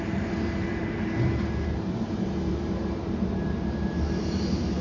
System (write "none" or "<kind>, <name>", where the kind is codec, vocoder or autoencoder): vocoder, BigVGAN v2